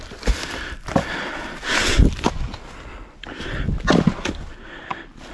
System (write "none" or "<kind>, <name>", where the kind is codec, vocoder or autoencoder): none